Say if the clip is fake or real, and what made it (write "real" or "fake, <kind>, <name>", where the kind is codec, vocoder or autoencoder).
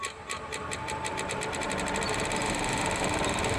fake, vocoder, BigVGAN v2